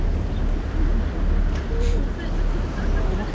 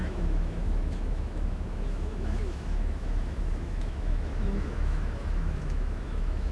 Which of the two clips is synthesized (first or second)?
second